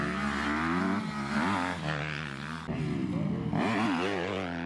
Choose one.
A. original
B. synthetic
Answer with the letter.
A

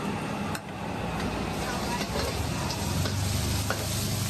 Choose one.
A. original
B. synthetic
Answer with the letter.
A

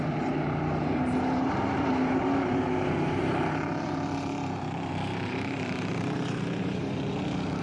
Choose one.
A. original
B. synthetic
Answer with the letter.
B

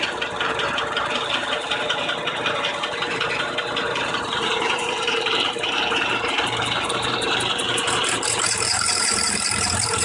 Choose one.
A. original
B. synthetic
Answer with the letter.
B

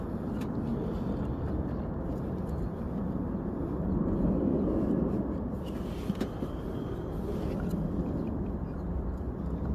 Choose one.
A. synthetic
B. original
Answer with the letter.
B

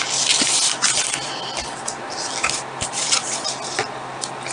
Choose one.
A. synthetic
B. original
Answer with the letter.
B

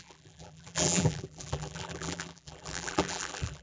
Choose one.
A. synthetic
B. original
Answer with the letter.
A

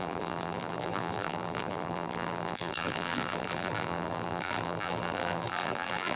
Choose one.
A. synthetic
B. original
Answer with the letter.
A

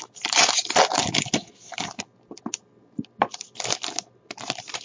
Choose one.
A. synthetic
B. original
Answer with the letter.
B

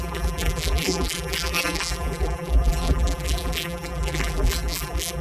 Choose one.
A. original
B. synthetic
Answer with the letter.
B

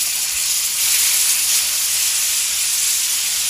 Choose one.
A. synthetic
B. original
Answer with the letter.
B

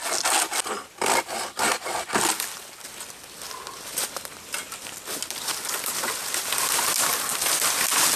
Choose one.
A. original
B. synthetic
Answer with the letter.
A